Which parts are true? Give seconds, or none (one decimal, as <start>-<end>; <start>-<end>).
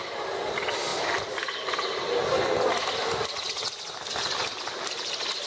0.0-5.5